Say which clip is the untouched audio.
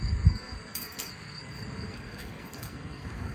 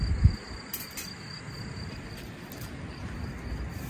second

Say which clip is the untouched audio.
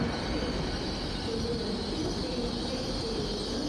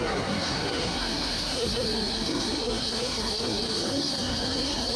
first